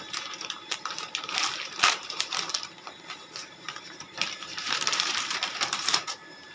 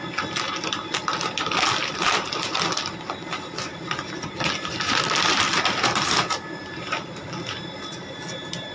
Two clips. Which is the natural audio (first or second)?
second